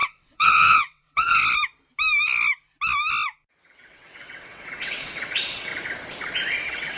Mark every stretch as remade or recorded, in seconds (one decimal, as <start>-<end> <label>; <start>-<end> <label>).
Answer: 0.0-1.4 remade; 1.4-3.5 recorded; 3.5-5.7 remade; 5.7-6.6 recorded; 6.6-7.0 remade